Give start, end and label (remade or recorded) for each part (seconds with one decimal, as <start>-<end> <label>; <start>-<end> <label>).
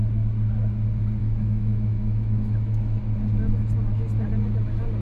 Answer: 0.0-1.2 recorded; 1.2-3.0 remade; 3.0-5.0 recorded